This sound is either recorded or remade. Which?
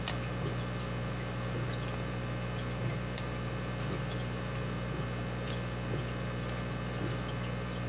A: remade